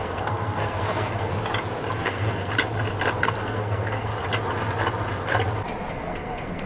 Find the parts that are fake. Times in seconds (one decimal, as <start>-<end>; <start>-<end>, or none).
0.0-1.3; 1.9-2.5; 3.2-4.1; 5.9-6.7